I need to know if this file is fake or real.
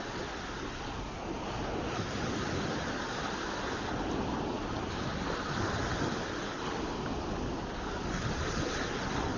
real